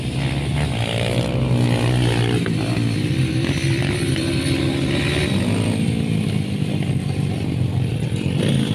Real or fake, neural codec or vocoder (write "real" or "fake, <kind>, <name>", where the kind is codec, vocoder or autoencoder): real